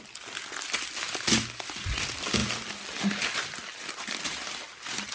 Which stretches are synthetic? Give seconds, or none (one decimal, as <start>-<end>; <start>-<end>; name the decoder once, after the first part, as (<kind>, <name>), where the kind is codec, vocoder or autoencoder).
none